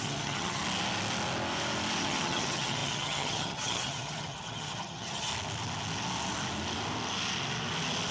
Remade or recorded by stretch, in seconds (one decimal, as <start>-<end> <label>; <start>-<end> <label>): 0.0-0.6 remade; 0.6-2.0 recorded; 2.0-5.3 remade; 5.3-8.1 recorded